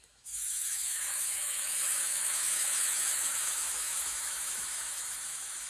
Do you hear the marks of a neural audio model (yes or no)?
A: yes